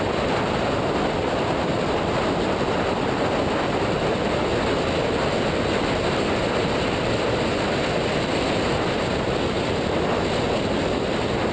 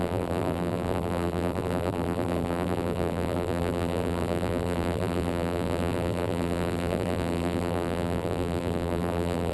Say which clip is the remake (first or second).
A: second